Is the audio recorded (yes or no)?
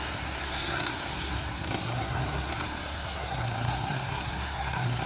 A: no